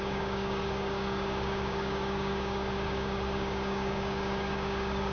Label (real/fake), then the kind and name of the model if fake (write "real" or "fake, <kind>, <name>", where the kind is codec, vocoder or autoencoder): fake, codec, DAC